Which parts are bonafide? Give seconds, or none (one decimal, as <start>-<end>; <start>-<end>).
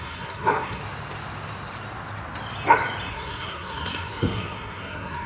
0.8-3.1